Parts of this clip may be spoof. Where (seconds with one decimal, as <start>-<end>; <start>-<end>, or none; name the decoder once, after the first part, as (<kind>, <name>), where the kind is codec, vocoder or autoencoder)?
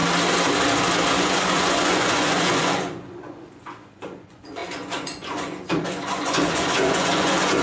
1.1-7.6 (vocoder, Vocos)